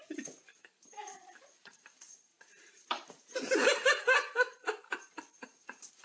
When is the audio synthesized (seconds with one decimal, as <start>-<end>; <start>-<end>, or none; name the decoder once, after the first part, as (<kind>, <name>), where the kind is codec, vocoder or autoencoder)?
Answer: 0.0-4.3 (vocoder, BigVGAN v2); 4.8-6.0